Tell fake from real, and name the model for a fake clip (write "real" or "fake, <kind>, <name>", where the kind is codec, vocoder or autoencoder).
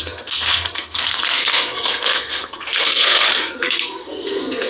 fake, codec, SNAC